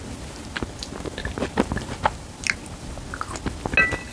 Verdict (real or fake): real